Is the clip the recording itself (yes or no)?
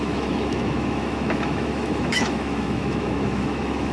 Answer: no